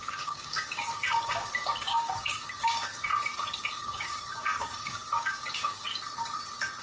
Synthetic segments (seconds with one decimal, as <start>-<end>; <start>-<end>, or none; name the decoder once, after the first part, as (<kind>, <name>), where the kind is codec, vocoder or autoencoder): 0.0-3.1 (codec, DAC); 3.7-5.9